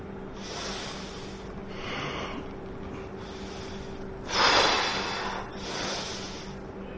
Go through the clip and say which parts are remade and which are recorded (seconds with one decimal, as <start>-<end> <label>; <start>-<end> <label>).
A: 0.0-7.0 recorded